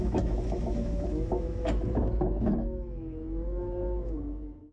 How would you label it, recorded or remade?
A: remade